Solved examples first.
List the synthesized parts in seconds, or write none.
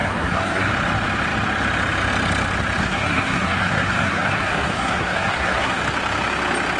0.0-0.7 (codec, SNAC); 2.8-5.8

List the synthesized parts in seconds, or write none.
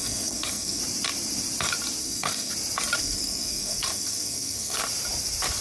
0.0-0.8 (codec, SNAC); 2.0-2.5; 3.0-4.8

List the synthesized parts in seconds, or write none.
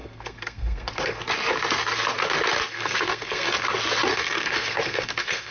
0.0-1.2 (codec, SNAC); 2.7-3.5; 4.1-5.5